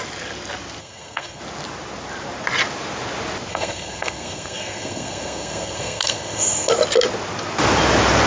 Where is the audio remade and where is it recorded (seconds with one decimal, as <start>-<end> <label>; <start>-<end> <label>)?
0.0-0.8 recorded; 0.8-1.4 remade; 1.4-3.5 recorded; 3.5-6.7 remade; 6.7-8.3 recorded